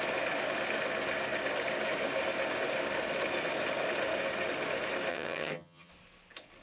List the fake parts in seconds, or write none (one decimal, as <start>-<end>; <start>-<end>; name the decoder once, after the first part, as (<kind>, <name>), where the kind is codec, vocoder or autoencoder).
5.1-5.9 (vocoder, HiFi-GAN)